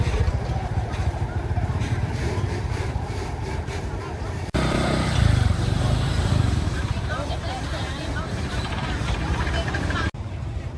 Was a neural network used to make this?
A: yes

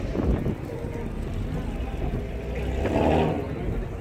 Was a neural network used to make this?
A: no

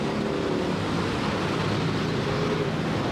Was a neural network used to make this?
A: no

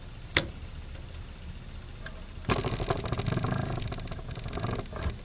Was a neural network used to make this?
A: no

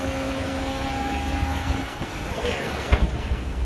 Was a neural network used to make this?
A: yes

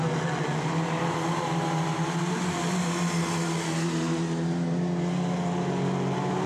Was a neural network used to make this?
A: no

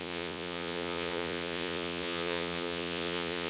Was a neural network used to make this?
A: yes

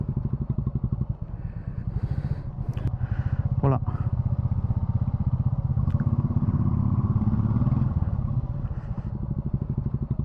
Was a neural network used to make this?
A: no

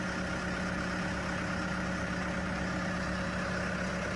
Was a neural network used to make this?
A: no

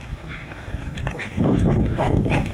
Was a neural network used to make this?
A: yes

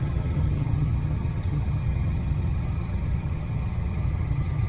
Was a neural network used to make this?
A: yes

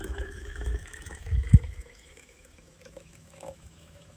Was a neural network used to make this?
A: yes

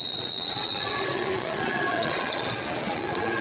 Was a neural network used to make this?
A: yes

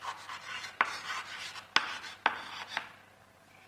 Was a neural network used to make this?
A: no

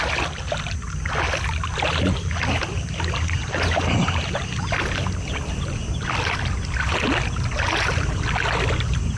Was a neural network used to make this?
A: no